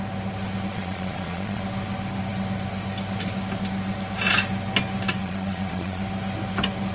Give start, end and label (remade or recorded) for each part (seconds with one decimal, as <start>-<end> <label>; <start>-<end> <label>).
0.0-0.7 recorded; 0.7-1.6 remade; 1.6-5.2 recorded; 5.2-6.0 remade; 6.0-6.9 recorded